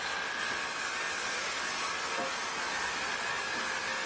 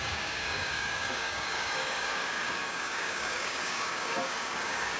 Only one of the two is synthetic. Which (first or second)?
second